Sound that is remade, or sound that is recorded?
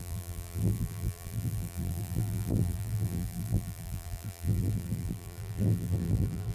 remade